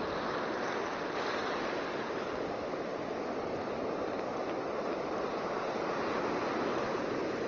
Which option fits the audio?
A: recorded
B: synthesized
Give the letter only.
A